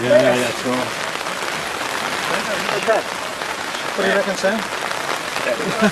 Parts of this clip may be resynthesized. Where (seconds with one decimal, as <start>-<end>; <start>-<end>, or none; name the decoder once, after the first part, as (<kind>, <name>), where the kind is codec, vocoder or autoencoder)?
3.3-3.9 (vocoder, Vocos)